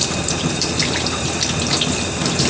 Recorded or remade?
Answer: remade